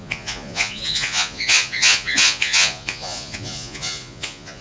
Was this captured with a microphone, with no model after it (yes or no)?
no